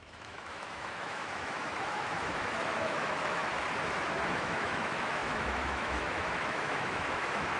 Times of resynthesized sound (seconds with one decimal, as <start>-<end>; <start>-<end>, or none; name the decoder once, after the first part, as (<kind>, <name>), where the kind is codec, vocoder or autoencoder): 0.0-3.4 (autoencoder, DAC-VAE); 4.3-7.6